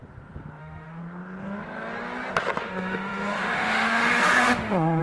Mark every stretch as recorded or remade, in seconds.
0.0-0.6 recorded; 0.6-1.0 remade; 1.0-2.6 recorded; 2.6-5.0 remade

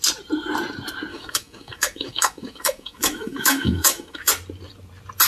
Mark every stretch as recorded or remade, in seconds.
0.0-1.1 recorded; 1.1-4.3 remade; 4.3-5.3 recorded

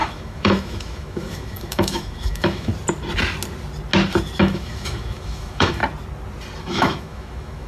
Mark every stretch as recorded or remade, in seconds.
0.0-2.7 remade; 2.7-4.4 recorded; 4.4-5.8 remade; 5.8-6.6 recorded; 6.6-7.7 remade

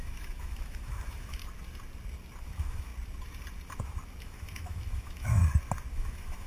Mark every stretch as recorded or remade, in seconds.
0.0-1.4 remade; 1.4-2.4 recorded; 2.4-2.9 remade; 2.9-4.2 recorded; 4.2-5.4 remade; 5.4-5.9 recorded; 5.9-6.5 remade

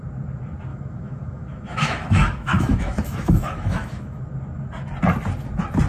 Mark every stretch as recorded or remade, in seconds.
0.0-0.7 recorded; 0.7-4.2 remade; 4.2-5.9 recorded

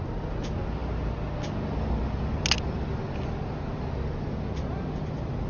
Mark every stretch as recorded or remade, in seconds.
0.0-5.5 recorded